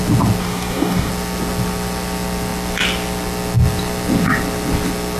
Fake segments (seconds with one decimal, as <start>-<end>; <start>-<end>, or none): 0.4-1.1